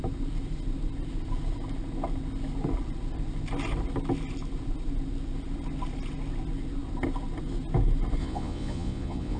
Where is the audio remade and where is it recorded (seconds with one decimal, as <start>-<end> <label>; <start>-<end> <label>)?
0.0-8.2 recorded; 8.2-9.4 remade